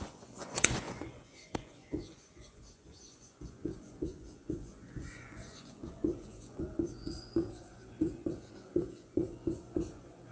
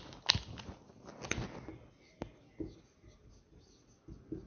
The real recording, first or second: second